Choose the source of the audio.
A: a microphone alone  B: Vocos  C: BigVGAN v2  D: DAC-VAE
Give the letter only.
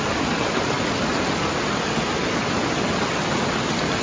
A